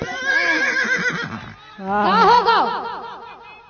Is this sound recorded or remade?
recorded